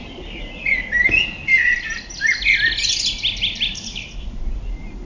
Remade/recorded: recorded